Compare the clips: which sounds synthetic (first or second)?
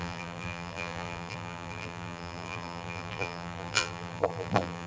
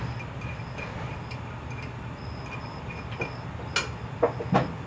first